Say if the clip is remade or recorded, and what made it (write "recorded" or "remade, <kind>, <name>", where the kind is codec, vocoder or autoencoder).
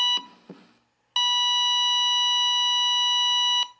recorded